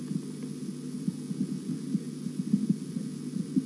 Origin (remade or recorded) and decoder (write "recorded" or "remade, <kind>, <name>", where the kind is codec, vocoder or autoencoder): recorded